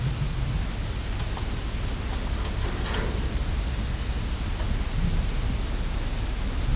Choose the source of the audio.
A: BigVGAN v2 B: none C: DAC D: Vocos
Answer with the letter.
B